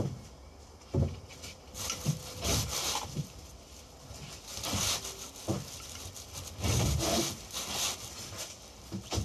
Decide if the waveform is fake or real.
real